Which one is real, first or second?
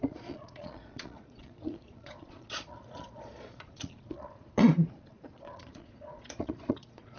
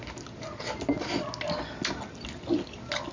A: second